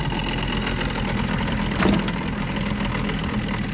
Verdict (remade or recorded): recorded